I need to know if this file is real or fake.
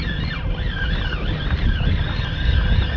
real